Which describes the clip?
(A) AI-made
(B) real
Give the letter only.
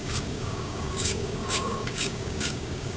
A